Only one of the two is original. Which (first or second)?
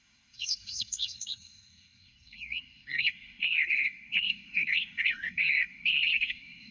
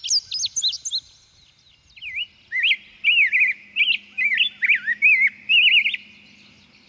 second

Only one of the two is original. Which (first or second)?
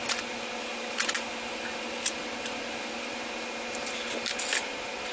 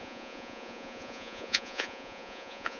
first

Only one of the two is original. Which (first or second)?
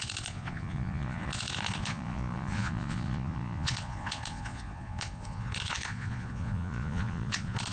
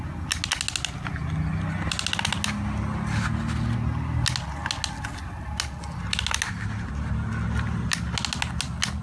second